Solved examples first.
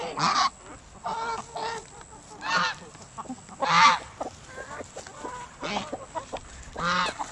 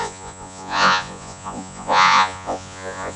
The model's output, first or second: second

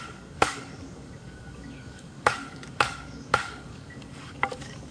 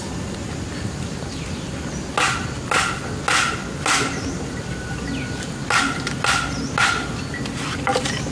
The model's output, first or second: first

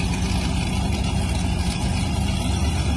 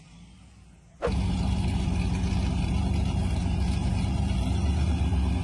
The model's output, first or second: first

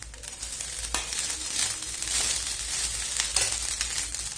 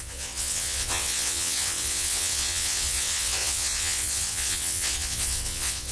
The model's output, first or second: second